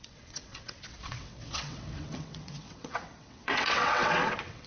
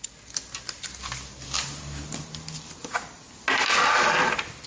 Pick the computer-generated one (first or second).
first